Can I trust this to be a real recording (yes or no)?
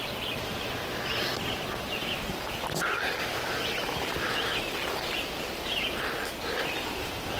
yes